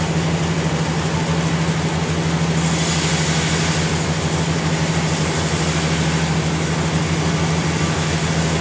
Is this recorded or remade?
recorded